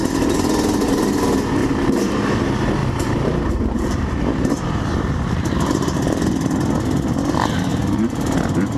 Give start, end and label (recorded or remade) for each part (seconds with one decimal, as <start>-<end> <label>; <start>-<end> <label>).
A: 0.0-1.6 recorded; 1.6-2.2 remade; 2.2-2.8 recorded; 2.8-6.0 remade; 6.0-8.8 recorded